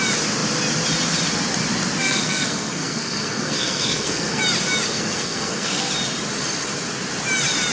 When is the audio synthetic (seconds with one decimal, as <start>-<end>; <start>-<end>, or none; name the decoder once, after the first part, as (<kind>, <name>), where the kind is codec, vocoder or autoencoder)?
2.0-4.4 (codec, SNAC); 4.9-5.9